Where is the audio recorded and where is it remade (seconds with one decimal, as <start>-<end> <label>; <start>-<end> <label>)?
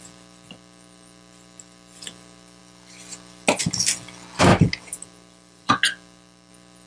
0.0-6.9 recorded